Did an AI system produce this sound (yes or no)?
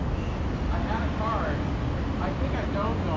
no